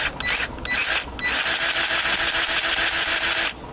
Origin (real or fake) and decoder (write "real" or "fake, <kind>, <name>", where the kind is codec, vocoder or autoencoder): real